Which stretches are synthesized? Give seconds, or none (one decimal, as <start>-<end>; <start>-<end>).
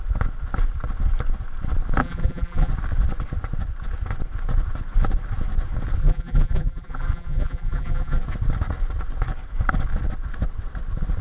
2.0-2.7; 6.0-8.2